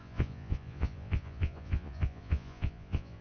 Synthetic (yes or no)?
yes